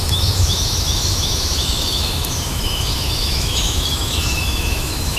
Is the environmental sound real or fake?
fake